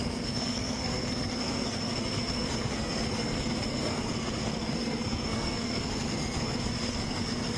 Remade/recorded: remade